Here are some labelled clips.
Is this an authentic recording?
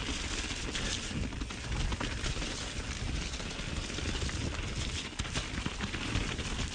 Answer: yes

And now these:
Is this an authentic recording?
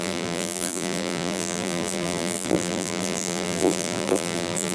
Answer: no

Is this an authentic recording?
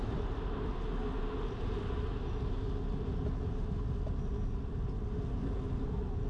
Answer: yes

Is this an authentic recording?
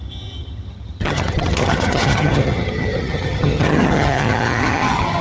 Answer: no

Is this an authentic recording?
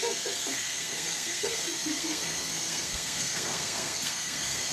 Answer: no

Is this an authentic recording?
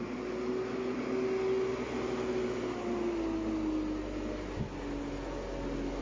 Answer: yes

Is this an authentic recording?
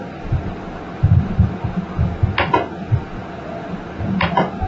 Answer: yes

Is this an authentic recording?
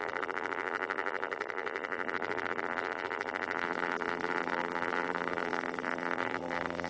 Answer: no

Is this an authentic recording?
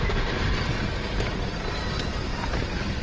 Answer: no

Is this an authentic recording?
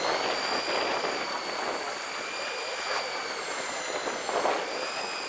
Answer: yes